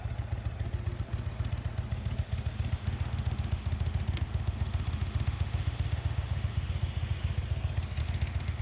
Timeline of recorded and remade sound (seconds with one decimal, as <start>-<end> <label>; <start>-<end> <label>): 0.0-2.8 recorded; 2.8-6.7 remade; 6.7-8.0 recorded; 8.0-8.6 remade